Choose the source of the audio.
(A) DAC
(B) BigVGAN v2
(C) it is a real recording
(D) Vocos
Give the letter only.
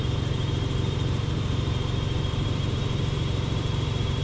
B